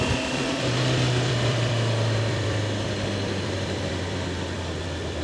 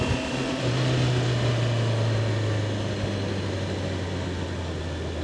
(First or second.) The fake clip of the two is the first